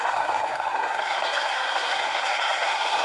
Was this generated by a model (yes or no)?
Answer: yes